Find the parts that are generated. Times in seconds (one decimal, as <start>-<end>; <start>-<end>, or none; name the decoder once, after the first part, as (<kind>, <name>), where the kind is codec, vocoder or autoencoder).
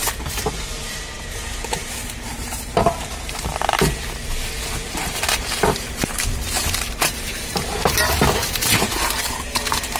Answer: 0.9-3.5 (vocoder, BigVGAN v2); 4.9-10.0